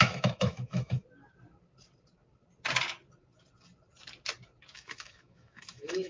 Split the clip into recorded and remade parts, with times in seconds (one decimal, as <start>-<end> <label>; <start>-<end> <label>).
0.0-1.0 remade; 1.0-4.7 recorded; 4.7-6.1 remade